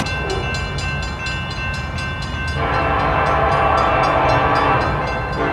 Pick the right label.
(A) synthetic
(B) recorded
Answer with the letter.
B